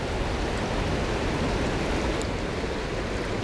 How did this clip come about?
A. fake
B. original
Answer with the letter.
B